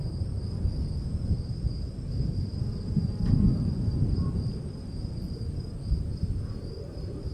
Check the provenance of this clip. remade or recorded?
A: remade